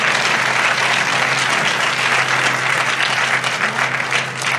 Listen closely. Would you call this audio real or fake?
real